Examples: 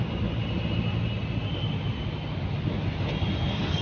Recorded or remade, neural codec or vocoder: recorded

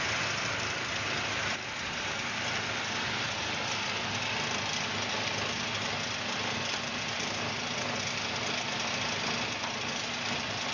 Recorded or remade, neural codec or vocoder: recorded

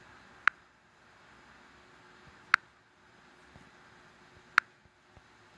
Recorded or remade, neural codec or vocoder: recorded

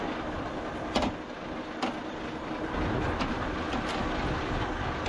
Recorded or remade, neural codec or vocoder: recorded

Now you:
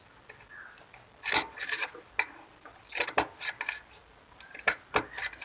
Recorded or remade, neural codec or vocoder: recorded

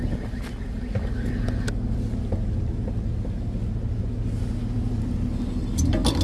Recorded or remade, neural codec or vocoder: recorded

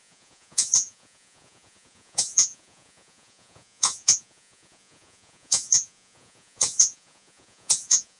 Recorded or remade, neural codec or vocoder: remade, vocoder, Vocos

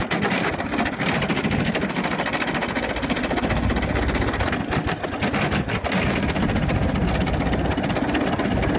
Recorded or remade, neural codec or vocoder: recorded